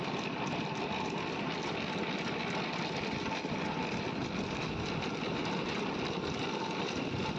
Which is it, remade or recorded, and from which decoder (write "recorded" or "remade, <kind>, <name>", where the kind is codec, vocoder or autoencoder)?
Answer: recorded